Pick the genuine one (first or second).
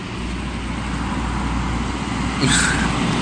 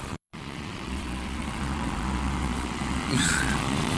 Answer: first